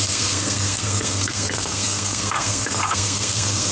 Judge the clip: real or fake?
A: fake